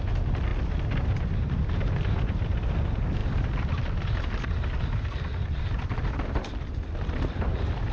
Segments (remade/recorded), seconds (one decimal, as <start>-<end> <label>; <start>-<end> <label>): 0.0-7.9 recorded